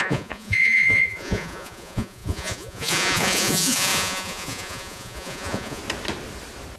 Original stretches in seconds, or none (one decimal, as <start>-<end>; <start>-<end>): 5.8-6.8